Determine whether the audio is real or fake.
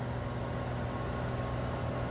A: real